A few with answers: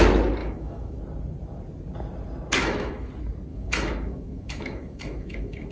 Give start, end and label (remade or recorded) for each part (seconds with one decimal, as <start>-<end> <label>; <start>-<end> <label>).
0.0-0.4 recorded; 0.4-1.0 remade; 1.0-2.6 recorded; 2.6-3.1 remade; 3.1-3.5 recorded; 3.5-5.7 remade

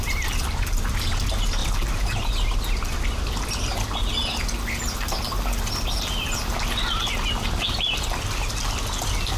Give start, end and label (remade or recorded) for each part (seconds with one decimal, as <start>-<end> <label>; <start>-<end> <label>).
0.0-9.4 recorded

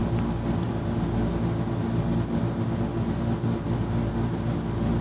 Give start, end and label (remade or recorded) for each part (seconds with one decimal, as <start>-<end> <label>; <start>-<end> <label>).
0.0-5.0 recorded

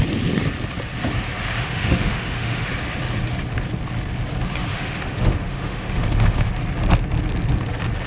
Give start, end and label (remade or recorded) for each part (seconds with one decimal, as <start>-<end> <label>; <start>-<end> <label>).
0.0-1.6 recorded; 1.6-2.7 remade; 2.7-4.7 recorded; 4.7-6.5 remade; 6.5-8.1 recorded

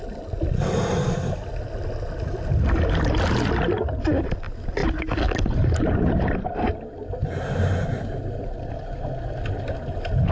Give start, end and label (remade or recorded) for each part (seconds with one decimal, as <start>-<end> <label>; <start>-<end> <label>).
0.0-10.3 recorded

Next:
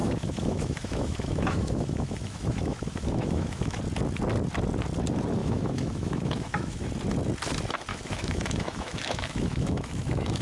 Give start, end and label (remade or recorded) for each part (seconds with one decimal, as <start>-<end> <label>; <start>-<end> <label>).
0.0-3.8 remade; 3.8-5.4 recorded; 5.4-6.9 remade; 6.9-7.9 recorded; 7.9-10.4 remade

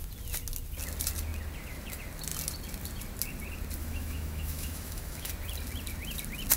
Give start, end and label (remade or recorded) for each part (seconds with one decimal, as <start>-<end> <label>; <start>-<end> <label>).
0.0-3.8 recorded; 3.8-5.3 remade; 5.3-6.6 recorded

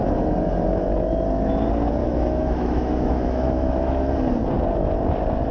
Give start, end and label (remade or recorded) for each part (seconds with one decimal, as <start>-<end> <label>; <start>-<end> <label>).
0.0-2.0 recorded; 2.0-4.1 remade; 4.1-5.5 recorded